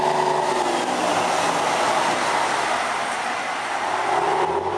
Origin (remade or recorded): recorded